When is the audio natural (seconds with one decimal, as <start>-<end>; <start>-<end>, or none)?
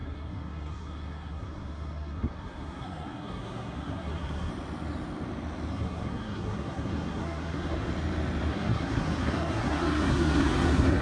4.5-5.7; 7.9-8.5